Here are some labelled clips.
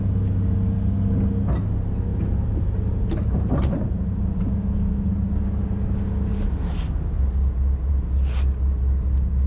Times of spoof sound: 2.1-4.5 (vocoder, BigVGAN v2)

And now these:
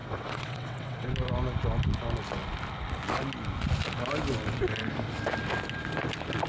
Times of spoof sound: 0.0-1.1 (vocoder, WaveNeXt)